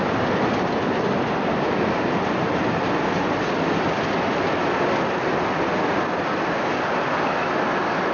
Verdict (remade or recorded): recorded